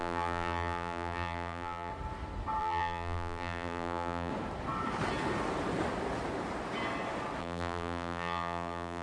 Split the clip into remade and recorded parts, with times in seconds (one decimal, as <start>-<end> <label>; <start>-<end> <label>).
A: 0.0-1.9 remade; 1.9-2.6 recorded; 2.6-4.3 remade; 4.3-7.4 recorded; 7.4-9.0 remade